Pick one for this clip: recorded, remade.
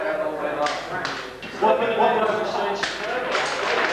recorded